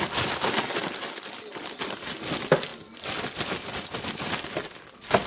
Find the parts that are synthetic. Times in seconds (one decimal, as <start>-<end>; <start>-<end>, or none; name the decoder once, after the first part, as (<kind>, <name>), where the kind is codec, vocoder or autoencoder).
none